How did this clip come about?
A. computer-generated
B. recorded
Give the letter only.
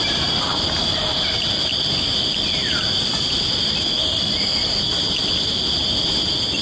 B